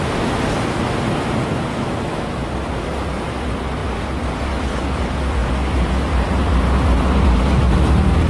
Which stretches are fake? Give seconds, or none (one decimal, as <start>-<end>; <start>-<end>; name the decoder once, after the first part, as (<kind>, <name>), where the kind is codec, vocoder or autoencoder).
1.7-2.5 (autoencoder, DAC-VAE)